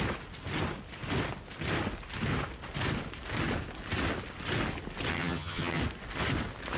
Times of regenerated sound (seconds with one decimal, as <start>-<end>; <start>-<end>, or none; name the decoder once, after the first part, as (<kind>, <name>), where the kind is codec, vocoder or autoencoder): 5.1-5.8 (vocoder, HiFi-GAN)